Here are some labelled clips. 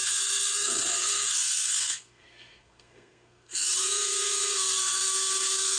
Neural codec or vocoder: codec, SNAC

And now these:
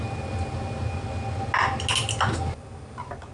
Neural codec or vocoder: none